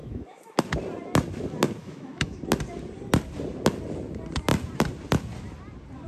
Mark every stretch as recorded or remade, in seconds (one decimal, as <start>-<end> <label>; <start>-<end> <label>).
0.0-0.6 remade; 0.6-1.8 recorded; 1.8-2.4 remade; 2.4-6.1 recorded